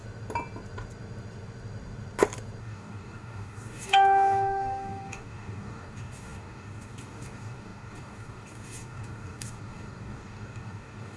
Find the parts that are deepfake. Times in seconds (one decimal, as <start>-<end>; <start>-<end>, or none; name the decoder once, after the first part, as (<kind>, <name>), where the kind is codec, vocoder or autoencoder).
2.6-11.2 (codec, DAC)